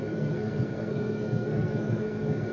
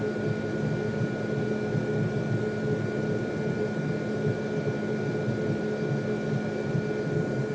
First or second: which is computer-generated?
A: first